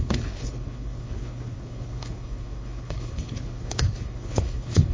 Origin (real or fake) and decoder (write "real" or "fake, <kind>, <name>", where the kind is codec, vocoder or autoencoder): fake, codec, HILCodec